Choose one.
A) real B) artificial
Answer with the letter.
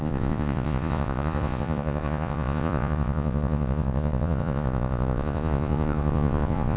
B